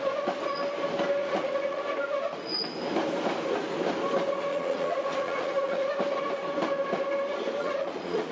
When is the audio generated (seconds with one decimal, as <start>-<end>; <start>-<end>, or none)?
1.2-1.8; 4.5-5.8; 7.6-8.3